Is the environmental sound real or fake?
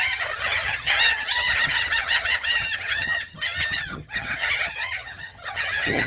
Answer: fake